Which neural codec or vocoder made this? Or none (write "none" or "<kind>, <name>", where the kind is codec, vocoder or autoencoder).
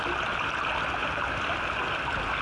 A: none